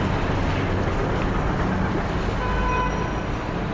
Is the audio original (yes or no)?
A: yes